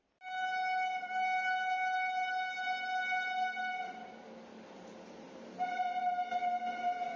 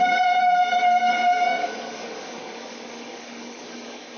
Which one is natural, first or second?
first